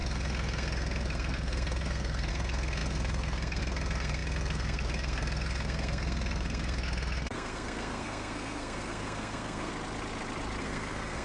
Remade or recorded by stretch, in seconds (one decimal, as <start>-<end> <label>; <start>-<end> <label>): 0.0-9.7 remade; 9.7-10.6 recorded; 10.6-11.2 remade